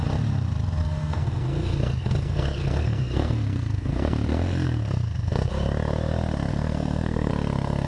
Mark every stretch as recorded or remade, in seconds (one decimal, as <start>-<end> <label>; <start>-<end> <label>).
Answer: 0.0-0.8 recorded; 0.8-5.5 remade; 5.5-6.5 recorded; 6.5-7.3 remade; 7.3-7.9 recorded